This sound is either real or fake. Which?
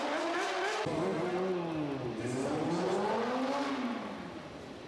real